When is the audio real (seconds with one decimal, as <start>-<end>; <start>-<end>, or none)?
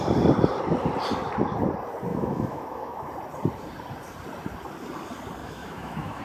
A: 0.0-2.1; 3.1-5.4